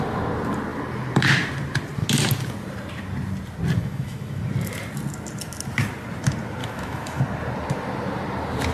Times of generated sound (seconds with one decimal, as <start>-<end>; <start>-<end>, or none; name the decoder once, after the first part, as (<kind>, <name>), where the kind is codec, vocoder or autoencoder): 3.8-4.4 (autoencoder, DAC-VAE); 6.6-7.2